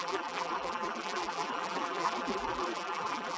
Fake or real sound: fake